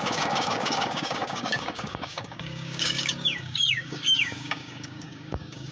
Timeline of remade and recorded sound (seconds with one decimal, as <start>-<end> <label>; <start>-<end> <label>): 0.0-5.7 remade